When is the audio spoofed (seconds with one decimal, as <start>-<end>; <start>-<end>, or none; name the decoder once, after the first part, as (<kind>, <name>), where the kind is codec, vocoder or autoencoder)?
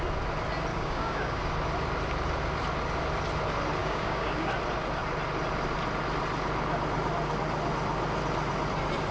0.7-1.4 (codec, DAC); 3.8-4.5